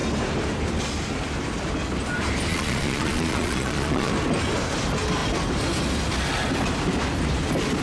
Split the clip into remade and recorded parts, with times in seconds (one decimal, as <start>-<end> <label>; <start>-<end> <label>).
0.0-2.5 recorded; 2.5-4.1 remade; 4.1-7.8 recorded